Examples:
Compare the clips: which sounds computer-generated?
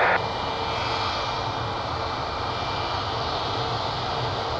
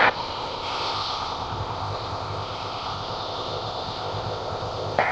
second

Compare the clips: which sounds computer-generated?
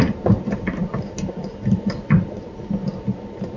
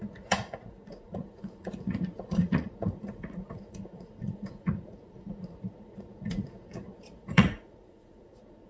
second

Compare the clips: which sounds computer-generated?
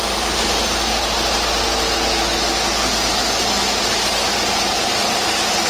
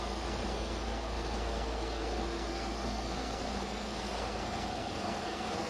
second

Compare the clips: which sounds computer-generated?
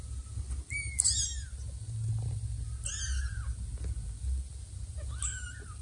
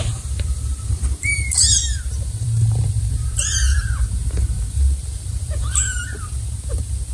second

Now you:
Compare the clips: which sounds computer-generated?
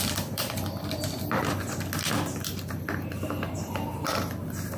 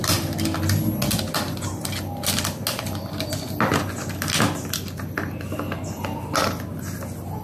first